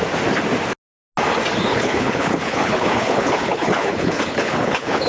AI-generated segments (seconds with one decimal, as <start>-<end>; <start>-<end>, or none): 1.7-5.1